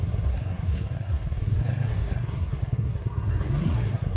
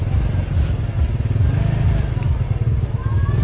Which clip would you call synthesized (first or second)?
first